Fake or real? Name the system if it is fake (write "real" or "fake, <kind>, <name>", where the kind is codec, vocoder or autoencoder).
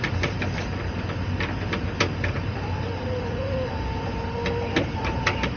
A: real